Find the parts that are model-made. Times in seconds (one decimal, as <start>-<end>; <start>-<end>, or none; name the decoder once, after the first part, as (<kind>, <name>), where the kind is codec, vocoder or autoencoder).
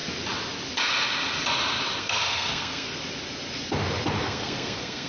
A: 2.0-3.0 (codec, SNAC); 4.2-5.1